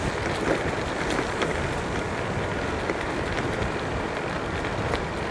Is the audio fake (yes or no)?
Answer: no